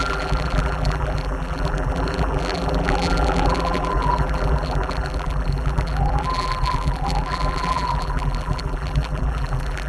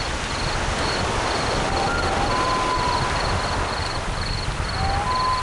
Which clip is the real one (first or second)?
second